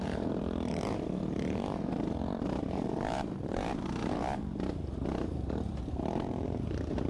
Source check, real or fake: fake